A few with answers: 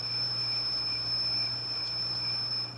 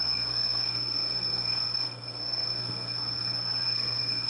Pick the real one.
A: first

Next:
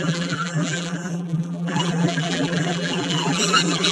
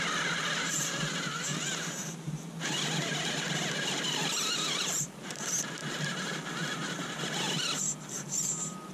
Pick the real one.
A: second